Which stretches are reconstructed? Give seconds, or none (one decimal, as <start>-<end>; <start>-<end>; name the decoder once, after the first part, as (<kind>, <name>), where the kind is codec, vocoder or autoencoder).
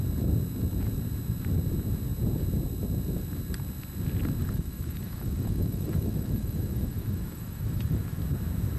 4.4-8.2 (autoencoder, DAC-VAE)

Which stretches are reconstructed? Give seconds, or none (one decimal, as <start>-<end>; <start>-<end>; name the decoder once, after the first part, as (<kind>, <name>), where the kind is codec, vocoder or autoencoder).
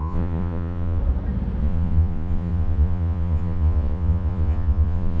0.0-1.0 (vocoder, Vocos); 1.6-5.2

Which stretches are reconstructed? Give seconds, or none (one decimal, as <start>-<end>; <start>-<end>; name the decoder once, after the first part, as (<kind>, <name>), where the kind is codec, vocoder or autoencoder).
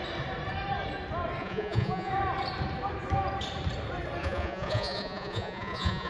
1.4-2.1 (vocoder, Vocos); 4.2-6.1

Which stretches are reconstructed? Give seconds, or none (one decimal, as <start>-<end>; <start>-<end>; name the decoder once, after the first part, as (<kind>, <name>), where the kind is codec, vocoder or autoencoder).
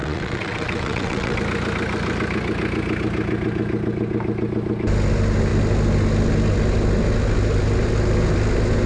0.0-1.4 (vocoder, WaveNeXt)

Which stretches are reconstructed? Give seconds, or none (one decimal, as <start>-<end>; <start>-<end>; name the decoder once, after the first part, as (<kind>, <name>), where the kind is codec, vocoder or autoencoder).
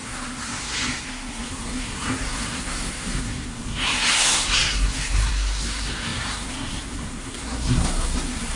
0.0-8.6 (codec, SNAC)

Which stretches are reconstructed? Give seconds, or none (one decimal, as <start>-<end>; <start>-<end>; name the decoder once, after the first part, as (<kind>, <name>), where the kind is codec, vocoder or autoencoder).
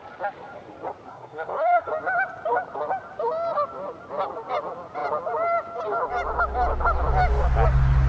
1.1-1.9 (codec, SNAC)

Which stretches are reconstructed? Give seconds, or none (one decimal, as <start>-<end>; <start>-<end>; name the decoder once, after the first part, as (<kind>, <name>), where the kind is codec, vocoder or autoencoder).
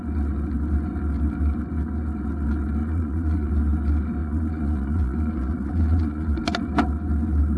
2.8-3.5 (vocoder, Vocos); 4.2-6.4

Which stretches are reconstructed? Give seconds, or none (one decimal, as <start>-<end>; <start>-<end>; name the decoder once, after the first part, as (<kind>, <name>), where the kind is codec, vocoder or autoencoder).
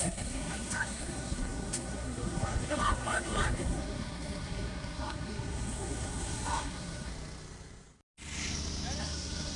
0.0-7.1 (codec, SNAC); 9.0-9.6